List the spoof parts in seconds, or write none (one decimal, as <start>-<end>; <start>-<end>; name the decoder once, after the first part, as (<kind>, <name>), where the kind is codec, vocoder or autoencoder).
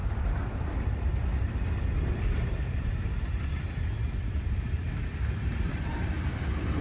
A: 0.0-3.6 (vocoder, BigVGAN v2); 4.0-6.1